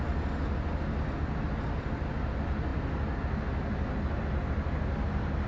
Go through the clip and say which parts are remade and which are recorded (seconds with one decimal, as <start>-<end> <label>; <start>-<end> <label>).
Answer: 0.0-5.5 recorded

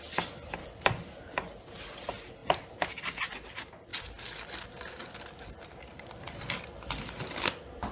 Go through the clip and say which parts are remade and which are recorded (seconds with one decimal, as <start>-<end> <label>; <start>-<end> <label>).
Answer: 0.0-2.4 recorded; 2.4-2.9 remade; 2.9-7.9 recorded